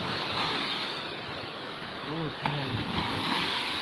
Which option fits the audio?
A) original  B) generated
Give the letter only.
B